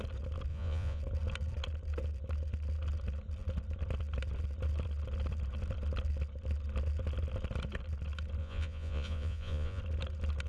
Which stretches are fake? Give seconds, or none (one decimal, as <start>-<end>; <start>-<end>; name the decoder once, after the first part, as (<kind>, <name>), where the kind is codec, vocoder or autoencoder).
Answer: 0.5-1.0 (vocoder, Vocos); 8.4-9.8

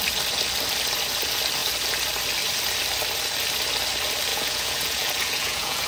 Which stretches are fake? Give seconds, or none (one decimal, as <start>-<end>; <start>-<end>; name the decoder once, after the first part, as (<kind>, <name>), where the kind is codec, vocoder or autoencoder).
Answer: 4.3-5.9 (vocoder, Vocos)

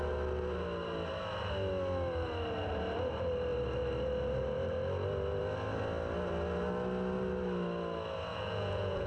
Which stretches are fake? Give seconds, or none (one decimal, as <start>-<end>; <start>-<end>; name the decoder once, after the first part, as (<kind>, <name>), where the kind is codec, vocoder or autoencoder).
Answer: 8.3-9.1 (vocoder, Vocos)

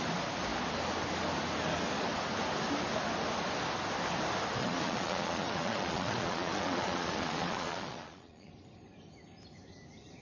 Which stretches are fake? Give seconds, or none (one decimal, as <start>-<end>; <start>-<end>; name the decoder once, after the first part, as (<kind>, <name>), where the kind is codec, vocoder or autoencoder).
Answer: 4.6-8.5 (vocoder, Vocos)